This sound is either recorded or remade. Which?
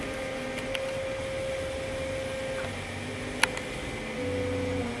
recorded